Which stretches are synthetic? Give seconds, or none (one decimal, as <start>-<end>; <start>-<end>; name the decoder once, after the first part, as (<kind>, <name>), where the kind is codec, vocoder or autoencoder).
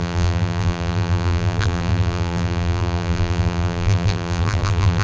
0.0-5.0 (vocoder, BigVGAN v2)